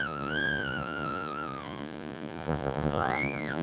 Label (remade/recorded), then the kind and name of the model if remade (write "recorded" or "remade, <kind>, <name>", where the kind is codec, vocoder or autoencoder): remade, vocoder, Vocos